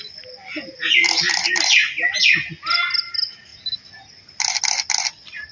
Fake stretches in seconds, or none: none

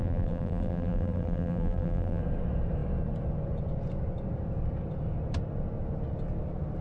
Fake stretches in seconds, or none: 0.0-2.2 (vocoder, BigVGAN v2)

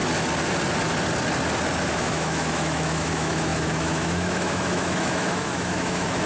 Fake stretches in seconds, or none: 1.9-6.3 (autoencoder, DAC-VAE)